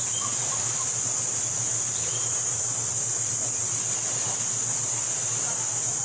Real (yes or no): yes